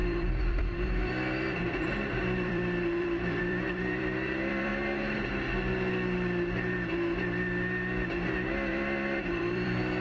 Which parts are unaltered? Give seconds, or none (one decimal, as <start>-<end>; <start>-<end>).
4.7-8.7